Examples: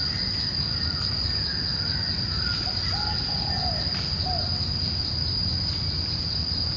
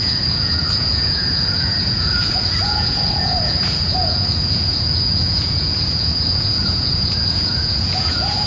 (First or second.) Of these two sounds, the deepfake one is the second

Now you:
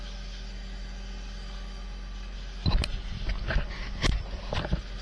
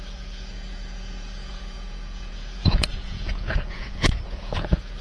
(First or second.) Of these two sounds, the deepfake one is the second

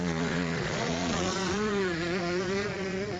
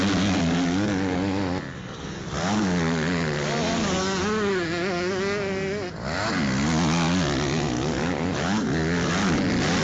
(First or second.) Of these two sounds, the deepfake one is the first